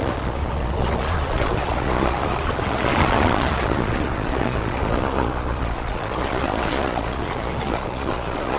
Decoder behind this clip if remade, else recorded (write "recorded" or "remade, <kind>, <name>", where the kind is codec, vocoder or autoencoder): remade, vocoder, Vocos